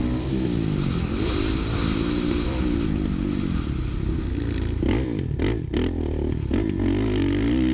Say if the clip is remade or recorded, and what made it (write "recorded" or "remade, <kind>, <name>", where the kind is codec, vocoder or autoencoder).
recorded